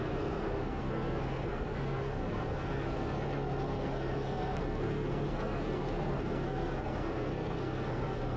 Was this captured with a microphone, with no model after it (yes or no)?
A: no